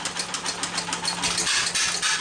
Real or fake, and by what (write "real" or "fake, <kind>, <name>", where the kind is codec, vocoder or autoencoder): real